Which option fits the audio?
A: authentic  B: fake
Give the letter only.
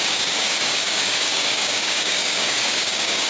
B